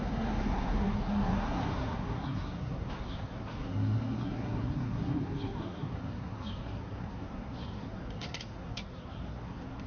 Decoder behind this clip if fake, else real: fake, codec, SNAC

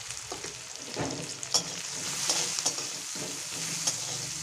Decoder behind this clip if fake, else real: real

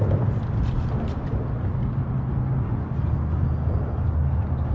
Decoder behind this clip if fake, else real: real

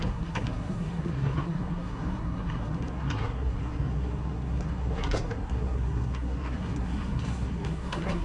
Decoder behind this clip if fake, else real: fake, codec, SNAC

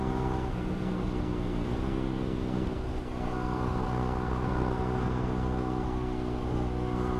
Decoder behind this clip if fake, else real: fake, codec, SNAC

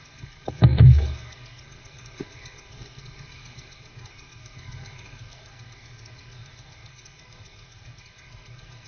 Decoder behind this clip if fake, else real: fake, codec, SNAC